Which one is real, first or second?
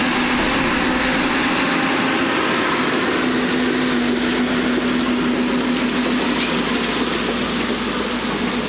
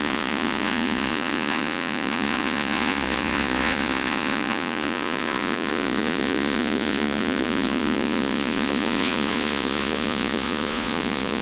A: first